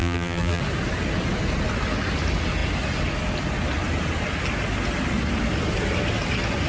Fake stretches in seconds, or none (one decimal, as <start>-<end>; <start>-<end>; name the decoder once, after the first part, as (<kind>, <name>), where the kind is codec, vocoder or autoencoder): 0.0-0.6 (vocoder, BigVGAN v2)